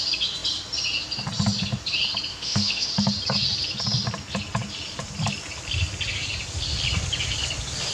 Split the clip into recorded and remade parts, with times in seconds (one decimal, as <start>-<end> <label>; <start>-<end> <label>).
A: 0.0-2.3 recorded; 2.3-2.9 remade; 2.9-7.9 recorded